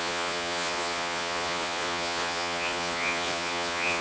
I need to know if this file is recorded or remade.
remade